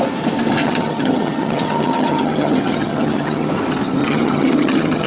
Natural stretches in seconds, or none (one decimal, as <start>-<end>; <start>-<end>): 0.0-0.6; 3.5-4.0